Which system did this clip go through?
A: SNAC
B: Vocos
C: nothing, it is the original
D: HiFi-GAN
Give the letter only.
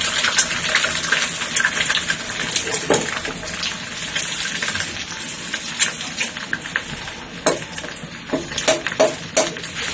C